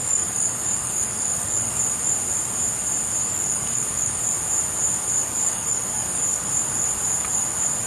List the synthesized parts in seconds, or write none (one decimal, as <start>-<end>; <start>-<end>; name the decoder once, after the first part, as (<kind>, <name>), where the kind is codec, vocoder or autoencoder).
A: 0.0-1.8 (codec, DAC); 3.2-4.2; 5.2-6.5